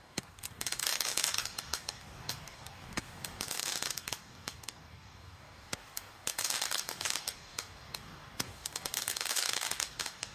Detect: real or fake fake